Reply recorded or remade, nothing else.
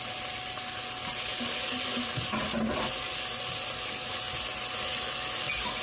recorded